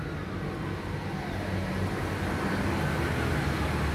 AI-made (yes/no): no